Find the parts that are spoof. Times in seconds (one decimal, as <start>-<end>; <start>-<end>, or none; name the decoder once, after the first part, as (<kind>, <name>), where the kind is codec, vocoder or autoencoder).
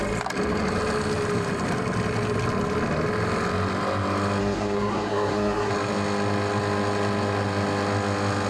4.4-5.7 (codec, SNAC)